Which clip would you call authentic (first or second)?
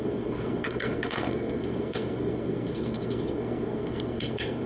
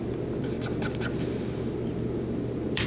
second